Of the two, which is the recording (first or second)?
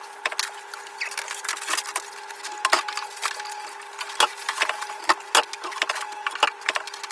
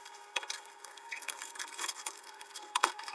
first